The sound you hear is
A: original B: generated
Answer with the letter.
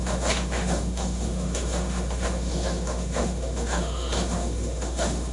B